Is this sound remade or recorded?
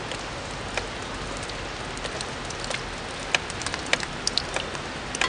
recorded